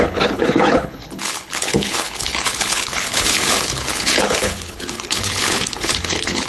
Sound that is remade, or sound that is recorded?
remade